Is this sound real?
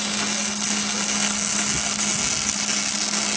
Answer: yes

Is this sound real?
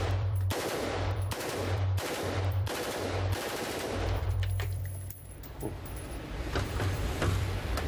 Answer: no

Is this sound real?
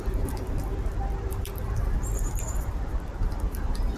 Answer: no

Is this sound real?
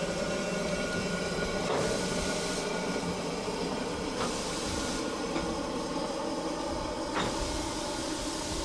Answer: yes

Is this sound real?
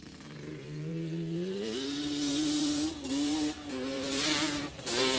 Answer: no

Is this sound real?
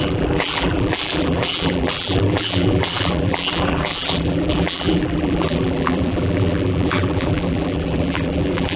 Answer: no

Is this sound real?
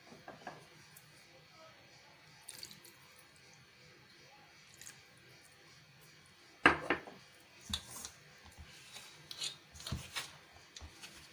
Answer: yes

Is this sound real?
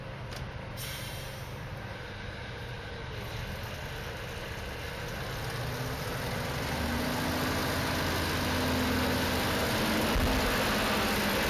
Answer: yes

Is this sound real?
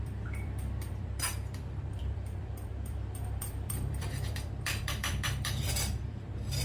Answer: no